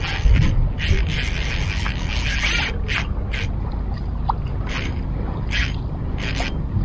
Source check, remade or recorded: recorded